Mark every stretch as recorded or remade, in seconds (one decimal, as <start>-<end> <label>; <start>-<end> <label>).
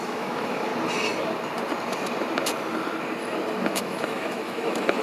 0.0-0.7 remade; 0.7-3.7 recorded; 3.7-5.0 remade